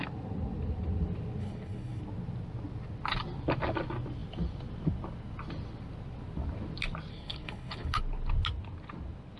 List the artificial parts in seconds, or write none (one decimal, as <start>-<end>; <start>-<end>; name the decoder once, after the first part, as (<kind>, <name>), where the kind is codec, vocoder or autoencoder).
1.4-2.0 (codec, HILCodec); 7.1-8.0